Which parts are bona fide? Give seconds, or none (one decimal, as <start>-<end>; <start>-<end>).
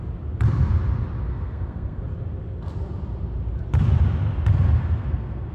0.0-1.3; 2.0-4.8